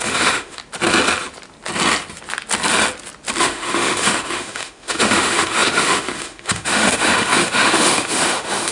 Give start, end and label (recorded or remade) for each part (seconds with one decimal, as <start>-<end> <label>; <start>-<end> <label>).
0.0-0.6 remade; 0.6-3.4 recorded; 3.4-8.7 remade